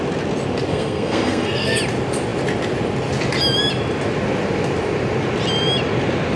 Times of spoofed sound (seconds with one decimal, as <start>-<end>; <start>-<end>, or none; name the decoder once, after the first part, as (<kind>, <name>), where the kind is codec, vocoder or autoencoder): 0.7-1.8 (codec, SNAC)